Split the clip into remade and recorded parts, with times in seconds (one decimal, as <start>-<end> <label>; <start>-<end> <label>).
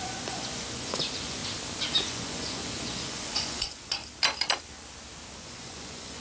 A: 0.0-1.4 remade; 1.4-2.0 recorded; 2.0-4.0 remade; 4.0-5.4 recorded; 5.4-6.2 remade